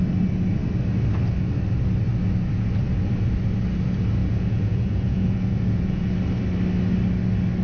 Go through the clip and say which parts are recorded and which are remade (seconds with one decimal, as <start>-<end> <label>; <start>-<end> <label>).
0.0-4.2 recorded; 4.2-6.0 remade; 6.0-7.6 recorded